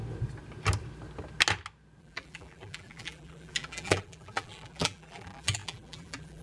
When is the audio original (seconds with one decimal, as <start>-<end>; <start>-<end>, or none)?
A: 0.0-2.0